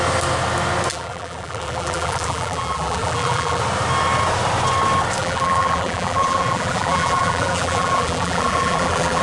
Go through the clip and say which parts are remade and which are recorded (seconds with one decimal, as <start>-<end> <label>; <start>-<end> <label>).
0.0-0.9 recorded; 0.9-3.6 remade; 3.6-5.2 recorded; 5.2-9.2 remade

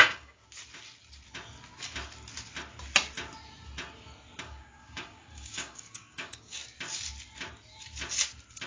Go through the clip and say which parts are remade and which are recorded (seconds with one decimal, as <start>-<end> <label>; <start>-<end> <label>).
0.0-0.4 remade; 0.4-4.4 recorded; 4.4-6.6 remade; 6.6-8.7 recorded

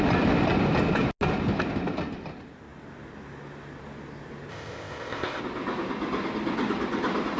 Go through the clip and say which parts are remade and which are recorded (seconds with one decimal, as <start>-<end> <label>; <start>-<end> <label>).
0.0-4.5 recorded; 4.5-5.4 remade; 5.4-7.4 recorded

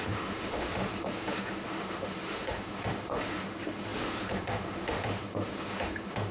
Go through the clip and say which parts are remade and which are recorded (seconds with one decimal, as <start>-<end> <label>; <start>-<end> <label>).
0.0-6.3 remade

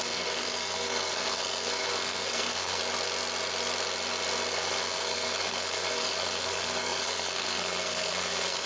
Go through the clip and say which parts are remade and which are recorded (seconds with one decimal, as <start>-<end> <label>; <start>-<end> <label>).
0.0-2.8 remade; 2.8-4.5 recorded; 4.5-8.7 remade

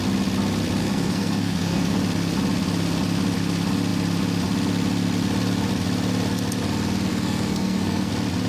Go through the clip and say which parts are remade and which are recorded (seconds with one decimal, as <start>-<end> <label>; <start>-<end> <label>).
0.0-0.8 recorded; 0.8-2.0 remade; 2.0-7.1 recorded; 7.1-8.1 remade; 8.1-8.5 recorded